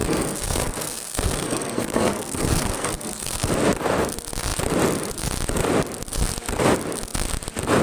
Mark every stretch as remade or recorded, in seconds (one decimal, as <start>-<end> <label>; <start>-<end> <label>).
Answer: 0.0-3.5 remade; 3.5-7.8 recorded